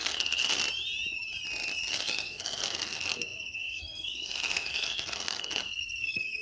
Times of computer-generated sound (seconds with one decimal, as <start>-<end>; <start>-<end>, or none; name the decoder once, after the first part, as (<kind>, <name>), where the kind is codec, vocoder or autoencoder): 0.0-0.6 (codec, SNAC); 1.9-6.4